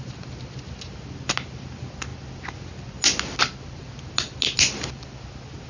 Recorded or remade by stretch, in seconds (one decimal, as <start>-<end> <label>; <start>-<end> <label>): 0.0-5.7 recorded